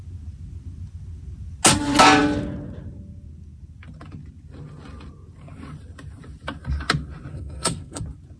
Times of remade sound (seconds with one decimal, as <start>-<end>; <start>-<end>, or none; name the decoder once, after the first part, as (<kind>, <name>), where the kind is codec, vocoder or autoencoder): 7.3-8.0 (codec, SNAC)